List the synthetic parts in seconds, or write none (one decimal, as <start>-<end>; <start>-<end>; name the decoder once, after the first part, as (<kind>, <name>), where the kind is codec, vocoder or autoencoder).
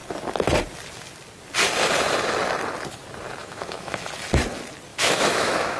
3.4-4.0 (autoencoder, DAC-VAE); 4.9-5.8